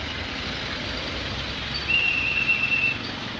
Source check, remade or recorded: recorded